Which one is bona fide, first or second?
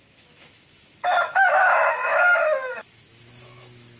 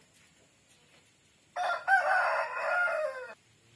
second